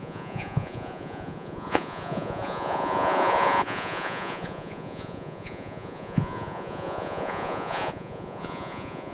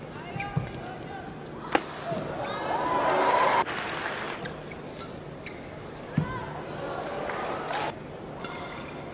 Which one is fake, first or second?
first